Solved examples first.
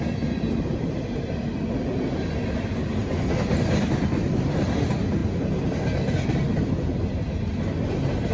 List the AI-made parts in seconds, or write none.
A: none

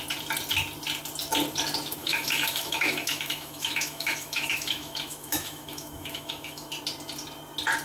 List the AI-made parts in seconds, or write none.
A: 2.0-6.7 (autoencoder, DAC-VAE)

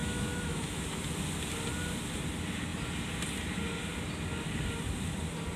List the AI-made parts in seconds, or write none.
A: 0.0-1.0 (autoencoder, DAC-VAE)

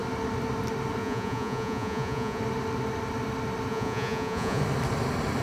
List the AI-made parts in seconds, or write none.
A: 1.0-2.4 (vocoder, Vocos); 3.7-4.6

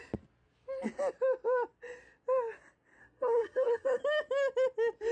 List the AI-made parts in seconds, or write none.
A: 3.0-4.0 (codec, SNAC)

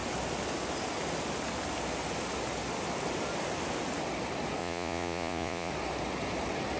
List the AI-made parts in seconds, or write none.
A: 4.6-5.7 (vocoder, Vocos)

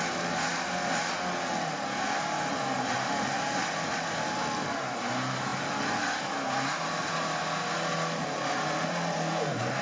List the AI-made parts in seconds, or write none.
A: none